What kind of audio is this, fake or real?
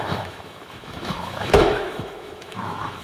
fake